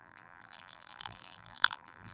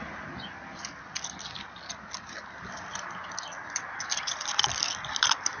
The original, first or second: second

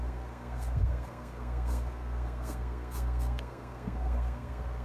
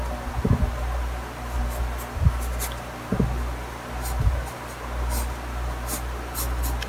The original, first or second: second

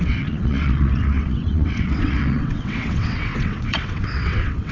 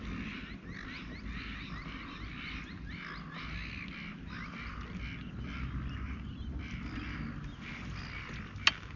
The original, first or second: second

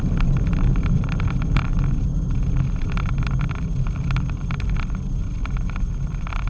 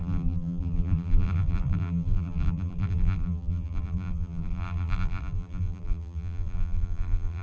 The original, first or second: first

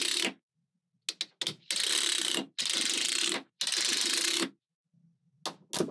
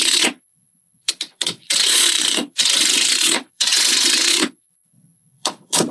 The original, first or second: first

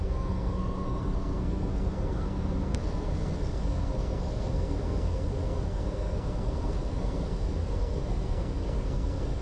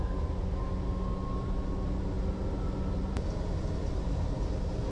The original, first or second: second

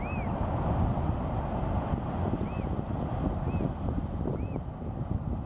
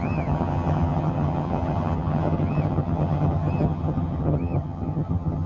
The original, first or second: first